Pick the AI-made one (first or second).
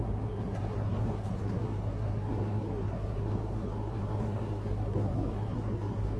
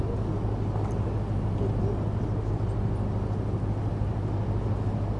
first